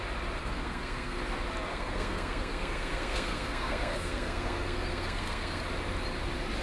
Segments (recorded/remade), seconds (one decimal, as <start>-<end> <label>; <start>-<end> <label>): 0.0-0.4 recorded; 0.4-1.2 remade; 1.2-1.7 recorded; 1.7-5.6 remade; 5.6-6.6 recorded